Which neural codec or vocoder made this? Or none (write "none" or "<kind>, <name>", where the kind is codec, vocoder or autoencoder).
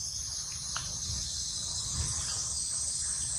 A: none